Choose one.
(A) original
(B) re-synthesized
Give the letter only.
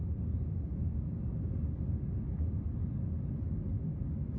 A